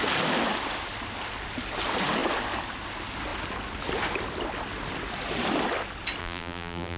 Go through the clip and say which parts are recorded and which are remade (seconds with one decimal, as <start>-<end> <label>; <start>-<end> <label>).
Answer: 0.0-6.2 recorded; 6.2-7.0 remade